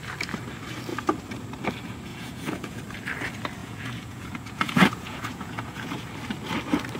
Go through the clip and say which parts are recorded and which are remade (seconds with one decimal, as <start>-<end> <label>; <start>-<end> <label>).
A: 0.0-2.1 recorded; 2.1-2.8 remade; 2.8-3.6 recorded; 3.6-5.9 remade; 5.9-7.0 recorded